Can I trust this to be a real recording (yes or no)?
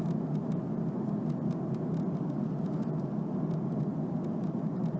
yes